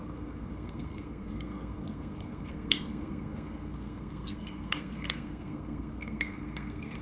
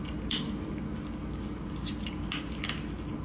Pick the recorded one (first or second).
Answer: second